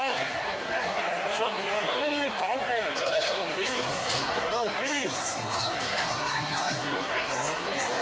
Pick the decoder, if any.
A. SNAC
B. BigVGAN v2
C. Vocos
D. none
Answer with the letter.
A